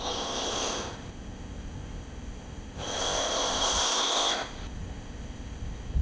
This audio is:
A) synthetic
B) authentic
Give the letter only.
A